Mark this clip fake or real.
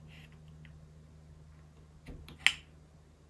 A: real